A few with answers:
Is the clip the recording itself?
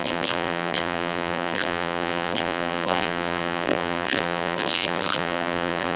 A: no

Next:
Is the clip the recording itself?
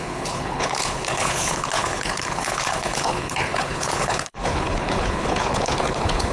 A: no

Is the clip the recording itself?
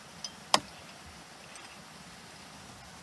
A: yes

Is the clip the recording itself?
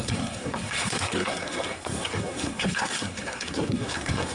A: no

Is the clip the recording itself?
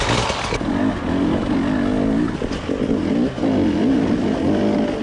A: yes